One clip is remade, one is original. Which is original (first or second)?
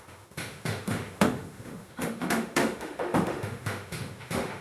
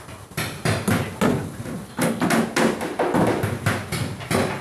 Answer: second